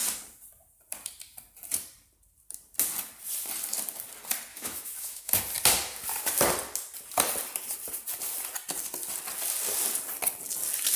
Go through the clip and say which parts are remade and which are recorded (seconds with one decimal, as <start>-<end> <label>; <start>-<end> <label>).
0.0-4.5 recorded; 4.5-5.4 remade; 5.4-11.0 recorded